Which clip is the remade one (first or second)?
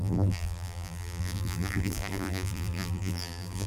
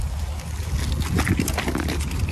first